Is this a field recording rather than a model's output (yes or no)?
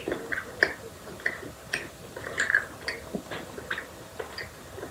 yes